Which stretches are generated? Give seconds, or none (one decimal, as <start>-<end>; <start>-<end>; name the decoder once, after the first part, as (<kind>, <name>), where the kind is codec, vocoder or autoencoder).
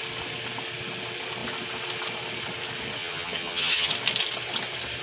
3.0-3.9 (vocoder, HiFi-GAN)